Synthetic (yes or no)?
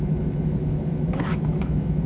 yes